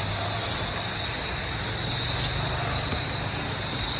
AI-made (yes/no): no